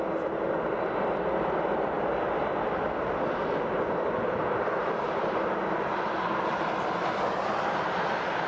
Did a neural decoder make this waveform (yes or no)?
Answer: no